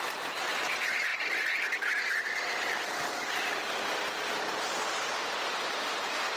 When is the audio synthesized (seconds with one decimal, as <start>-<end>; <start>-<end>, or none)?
none